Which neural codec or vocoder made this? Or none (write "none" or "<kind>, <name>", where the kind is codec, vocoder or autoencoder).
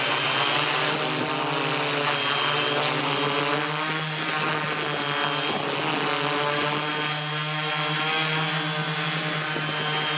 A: none